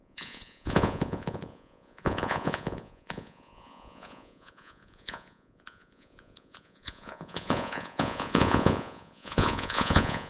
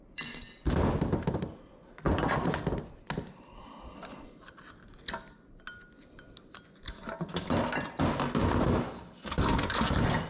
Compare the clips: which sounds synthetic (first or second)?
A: first